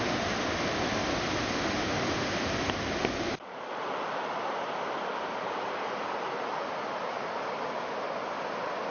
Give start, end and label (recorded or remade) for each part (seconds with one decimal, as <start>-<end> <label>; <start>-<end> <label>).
0.0-8.9 recorded

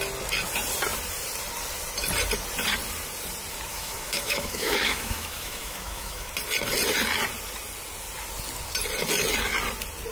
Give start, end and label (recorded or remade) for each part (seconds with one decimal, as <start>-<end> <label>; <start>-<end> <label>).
0.0-3.7 recorded; 3.7-6.3 remade; 6.3-10.1 recorded

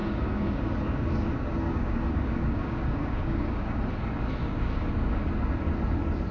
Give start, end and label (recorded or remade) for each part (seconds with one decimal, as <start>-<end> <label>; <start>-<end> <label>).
0.0-3.8 remade; 3.8-4.4 recorded; 4.4-5.2 remade; 5.2-6.3 recorded

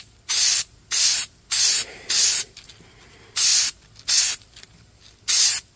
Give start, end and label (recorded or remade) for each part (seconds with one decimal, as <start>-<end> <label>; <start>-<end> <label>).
0.0-5.8 recorded

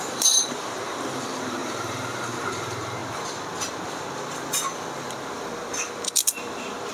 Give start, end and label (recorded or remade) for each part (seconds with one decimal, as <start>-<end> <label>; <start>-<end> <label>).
0.0-3.0 remade; 3.0-6.9 recorded

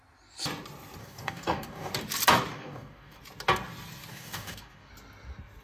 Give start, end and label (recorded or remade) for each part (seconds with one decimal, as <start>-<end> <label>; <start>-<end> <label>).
0.0-1.0 recorded; 1.0-1.9 remade; 1.9-2.5 recorded; 2.5-3.2 remade; 3.2-4.1 recorded; 4.1-4.9 remade; 4.9-5.6 recorded

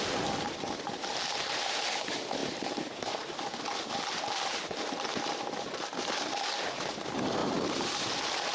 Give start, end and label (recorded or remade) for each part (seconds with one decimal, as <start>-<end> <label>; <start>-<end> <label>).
0.0-1.1 recorded; 1.1-1.9 remade; 1.9-8.5 recorded